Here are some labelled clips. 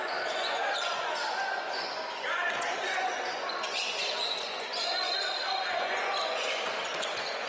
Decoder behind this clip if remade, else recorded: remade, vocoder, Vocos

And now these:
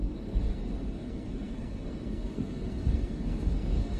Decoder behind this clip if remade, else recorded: remade, codec, SNAC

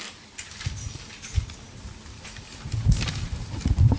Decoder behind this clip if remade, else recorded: recorded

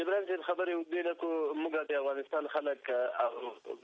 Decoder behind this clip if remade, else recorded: recorded